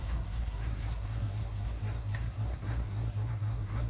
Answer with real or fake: fake